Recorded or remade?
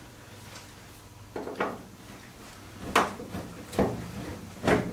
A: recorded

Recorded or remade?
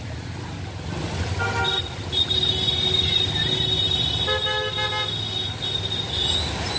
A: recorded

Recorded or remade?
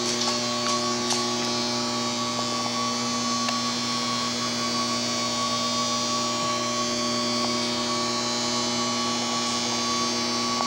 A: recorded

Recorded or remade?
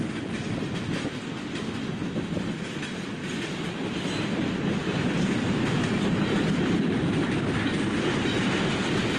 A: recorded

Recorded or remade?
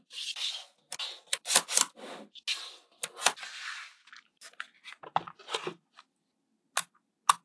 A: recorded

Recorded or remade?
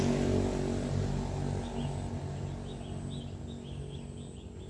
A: recorded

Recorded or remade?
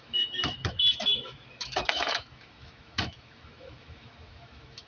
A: remade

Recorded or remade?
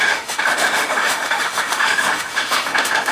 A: remade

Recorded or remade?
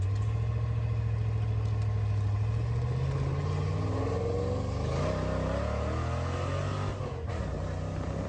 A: recorded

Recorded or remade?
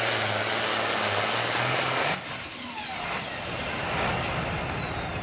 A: recorded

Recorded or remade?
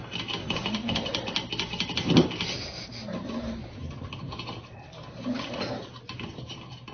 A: recorded